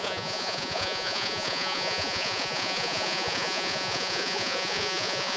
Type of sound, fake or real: fake